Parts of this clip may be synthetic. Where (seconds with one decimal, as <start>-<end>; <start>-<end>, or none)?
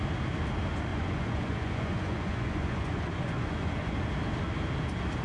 0.9-3.9